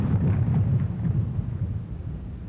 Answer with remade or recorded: recorded